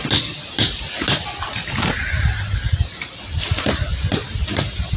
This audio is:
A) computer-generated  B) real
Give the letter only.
B